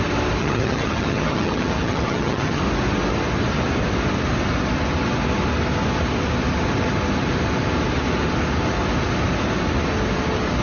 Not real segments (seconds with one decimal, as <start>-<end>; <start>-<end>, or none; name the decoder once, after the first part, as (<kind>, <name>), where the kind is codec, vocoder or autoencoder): 0.4-2.6 (vocoder, HiFi-GAN)